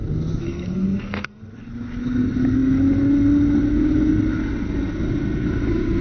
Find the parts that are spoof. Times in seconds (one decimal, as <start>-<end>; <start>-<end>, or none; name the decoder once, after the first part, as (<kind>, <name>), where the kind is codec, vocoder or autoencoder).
0.4-1.4 (codec, SNAC)